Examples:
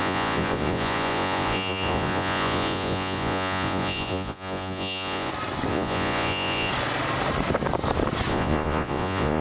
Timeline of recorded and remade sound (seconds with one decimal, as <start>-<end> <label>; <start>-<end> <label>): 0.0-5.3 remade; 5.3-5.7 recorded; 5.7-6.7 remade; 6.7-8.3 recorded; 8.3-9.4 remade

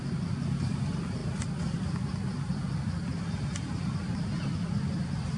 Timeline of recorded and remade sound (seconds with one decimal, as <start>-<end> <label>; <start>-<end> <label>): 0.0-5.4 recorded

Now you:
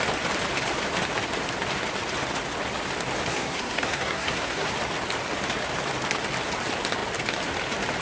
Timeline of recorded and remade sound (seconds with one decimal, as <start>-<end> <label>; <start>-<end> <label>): 0.0-3.3 recorded; 3.3-4.7 remade; 4.7-8.0 recorded

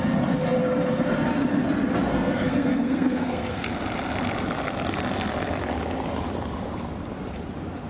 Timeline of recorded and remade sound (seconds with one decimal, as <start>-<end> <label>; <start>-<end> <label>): 0.0-2.1 recorded; 2.1-3.7 remade; 3.7-7.9 recorded

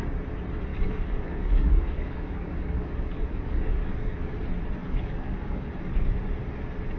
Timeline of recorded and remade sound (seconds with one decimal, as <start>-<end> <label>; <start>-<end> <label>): 0.0-0.7 recorded; 0.7-4.3 remade; 4.3-4.8 recorded; 4.8-5.7 remade; 5.7-7.0 recorded

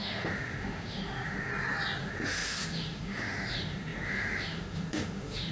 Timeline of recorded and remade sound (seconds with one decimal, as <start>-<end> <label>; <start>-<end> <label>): 0.0-1.5 remade; 1.5-2.0 recorded; 2.0-5.5 remade